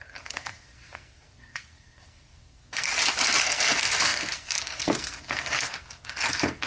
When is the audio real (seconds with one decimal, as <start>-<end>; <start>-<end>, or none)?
2.9-3.4